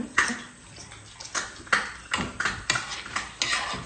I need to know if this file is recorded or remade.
recorded